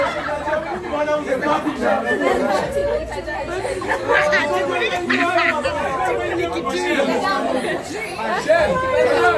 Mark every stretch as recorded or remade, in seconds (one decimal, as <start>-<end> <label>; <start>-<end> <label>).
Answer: 0.0-2.8 recorded; 2.8-3.4 remade; 3.4-9.4 recorded